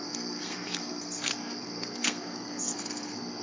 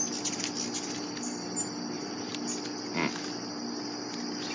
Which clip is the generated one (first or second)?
first